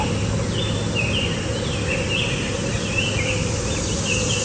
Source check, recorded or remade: recorded